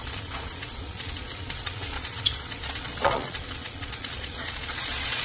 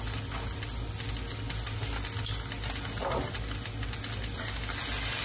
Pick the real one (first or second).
second